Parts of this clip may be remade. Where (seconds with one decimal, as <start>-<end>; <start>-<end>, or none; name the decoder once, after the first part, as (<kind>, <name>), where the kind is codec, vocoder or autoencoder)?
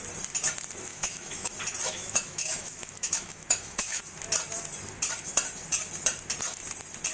0.9-1.5 (autoencoder, DAC-VAE); 1.9-4.0